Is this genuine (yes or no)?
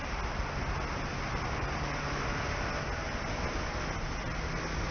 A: yes